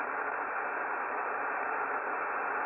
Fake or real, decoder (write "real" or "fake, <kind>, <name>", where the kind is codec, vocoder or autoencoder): real